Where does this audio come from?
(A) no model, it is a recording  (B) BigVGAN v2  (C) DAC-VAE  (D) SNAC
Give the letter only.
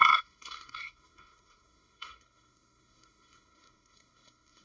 D